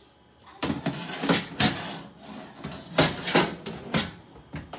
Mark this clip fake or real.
real